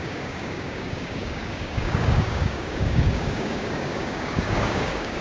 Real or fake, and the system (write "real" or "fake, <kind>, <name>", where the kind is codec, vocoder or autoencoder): fake, codec, DAC